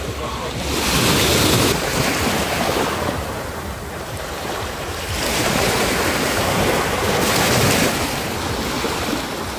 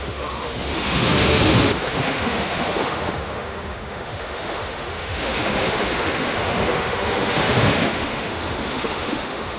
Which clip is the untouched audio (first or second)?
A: first